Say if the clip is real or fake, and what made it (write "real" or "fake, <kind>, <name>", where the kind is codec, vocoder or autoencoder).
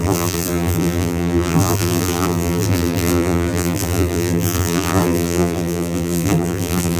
fake, vocoder, BigVGAN v2